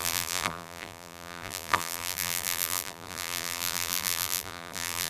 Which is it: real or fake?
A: fake